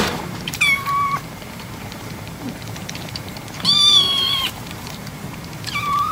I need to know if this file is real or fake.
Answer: fake